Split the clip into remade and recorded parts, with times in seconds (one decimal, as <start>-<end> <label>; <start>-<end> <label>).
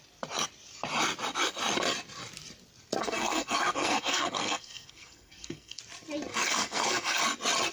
0.0-3.0 recorded; 3.0-5.8 remade; 5.8-6.3 recorded; 6.3-7.2 remade; 7.2-7.7 recorded